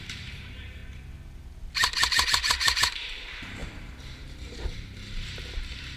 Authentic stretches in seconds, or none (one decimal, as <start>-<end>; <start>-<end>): 0.8-2.1